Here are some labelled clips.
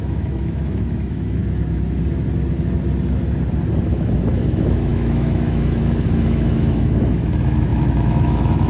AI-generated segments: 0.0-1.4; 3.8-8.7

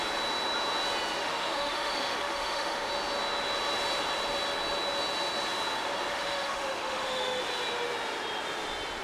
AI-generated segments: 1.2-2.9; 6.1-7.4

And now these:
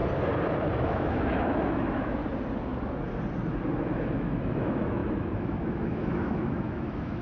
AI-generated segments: 0.7-2.2; 4.0-7.2

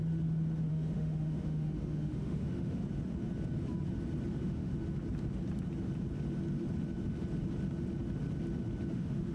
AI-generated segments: 0.7-2.8; 4.3-4.7; 8.9-9.3

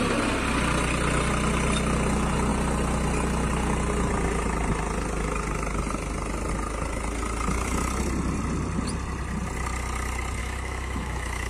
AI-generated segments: 10.4-11.5

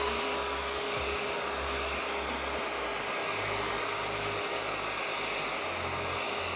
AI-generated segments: none

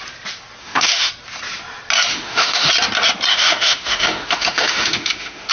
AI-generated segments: 0.6-1.1; 2.1-2.7; 3.3-5.5